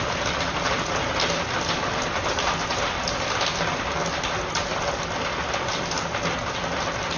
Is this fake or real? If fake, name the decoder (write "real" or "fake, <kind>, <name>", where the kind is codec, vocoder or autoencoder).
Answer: real